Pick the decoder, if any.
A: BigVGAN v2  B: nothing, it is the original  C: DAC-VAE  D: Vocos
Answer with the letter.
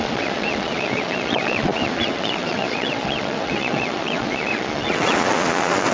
D